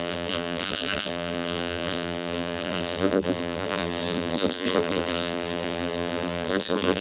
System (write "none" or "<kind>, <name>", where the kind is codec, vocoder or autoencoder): vocoder, BigVGAN v2